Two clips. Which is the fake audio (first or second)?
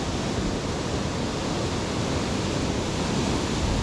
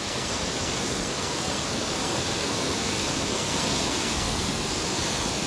second